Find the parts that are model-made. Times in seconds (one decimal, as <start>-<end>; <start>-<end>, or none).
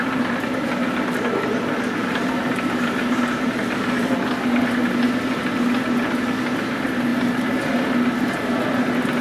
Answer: none